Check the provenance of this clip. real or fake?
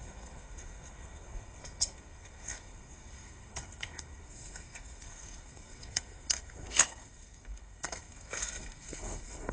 fake